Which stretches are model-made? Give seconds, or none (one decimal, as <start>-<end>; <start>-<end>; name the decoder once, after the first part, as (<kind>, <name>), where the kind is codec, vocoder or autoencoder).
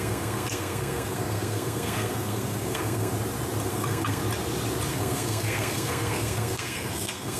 0.0-3.1 (codec, SNAC); 3.7-4.2; 4.9-7.4